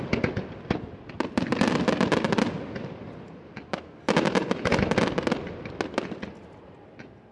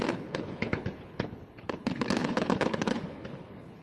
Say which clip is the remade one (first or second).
second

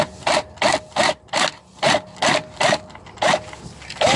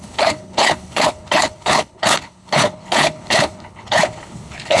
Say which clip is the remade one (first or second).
second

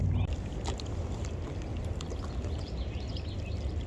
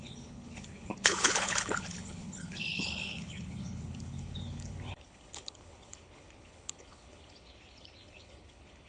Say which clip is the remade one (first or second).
second